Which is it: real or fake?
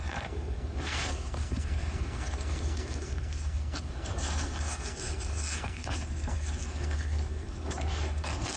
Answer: fake